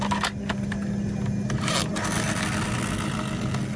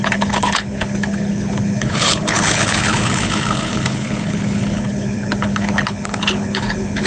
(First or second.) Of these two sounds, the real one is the first